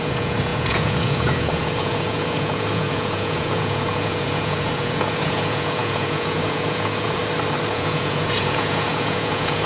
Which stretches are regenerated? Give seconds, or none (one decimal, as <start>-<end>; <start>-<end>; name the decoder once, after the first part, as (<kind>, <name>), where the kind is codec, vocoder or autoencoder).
0.0-7.2 (vocoder, Vocos); 7.7-9.7